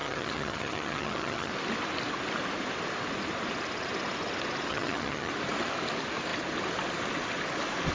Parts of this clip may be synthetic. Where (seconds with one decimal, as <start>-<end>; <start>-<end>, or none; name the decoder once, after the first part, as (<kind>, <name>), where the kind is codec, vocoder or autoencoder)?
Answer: 0.0-1.5 (vocoder, HiFi-GAN); 4.7-5.3